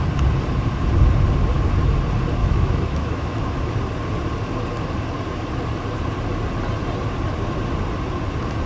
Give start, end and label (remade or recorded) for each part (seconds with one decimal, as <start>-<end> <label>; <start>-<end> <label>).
0.0-2.4 recorded; 2.4-3.7 remade; 3.7-8.7 recorded